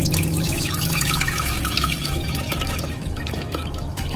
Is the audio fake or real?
fake